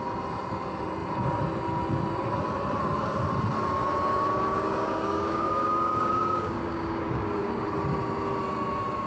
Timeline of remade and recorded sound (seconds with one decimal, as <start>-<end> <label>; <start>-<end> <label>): 0.0-4.1 recorded; 4.1-7.6 remade; 7.6-9.1 recorded